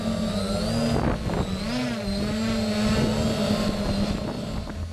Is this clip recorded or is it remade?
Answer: recorded